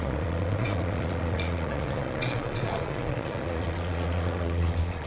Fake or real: fake